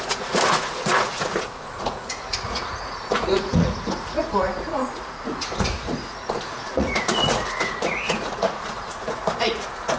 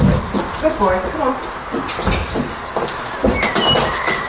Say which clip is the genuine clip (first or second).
second